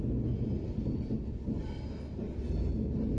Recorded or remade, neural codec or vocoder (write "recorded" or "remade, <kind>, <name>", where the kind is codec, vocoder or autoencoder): recorded